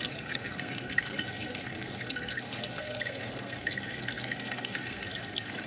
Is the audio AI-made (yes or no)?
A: yes